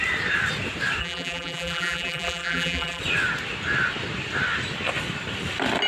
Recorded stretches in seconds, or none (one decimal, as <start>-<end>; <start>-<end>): 0.0-1.0; 3.0-5.9